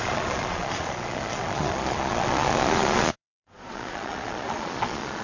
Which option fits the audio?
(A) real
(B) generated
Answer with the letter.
B